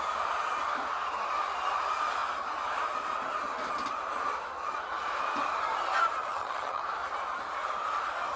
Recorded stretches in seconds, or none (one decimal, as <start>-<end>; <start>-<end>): 0.0-6.2; 6.8-8.4